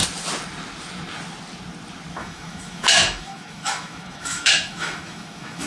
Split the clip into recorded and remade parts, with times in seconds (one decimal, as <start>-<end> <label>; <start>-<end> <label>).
0.0-2.2 recorded; 2.2-5.7 remade